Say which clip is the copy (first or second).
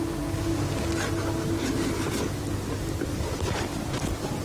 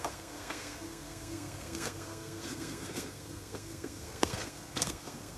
second